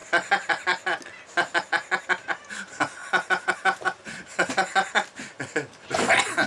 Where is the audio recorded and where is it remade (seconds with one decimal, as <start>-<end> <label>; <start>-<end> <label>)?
0.0-3.0 recorded; 3.0-5.4 remade; 5.4-6.5 recorded